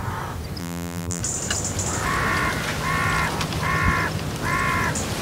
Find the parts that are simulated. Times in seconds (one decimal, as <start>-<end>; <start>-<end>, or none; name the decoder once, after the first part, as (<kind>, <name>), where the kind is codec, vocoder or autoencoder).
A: 0.6-1.2 (vocoder, BigVGAN v2)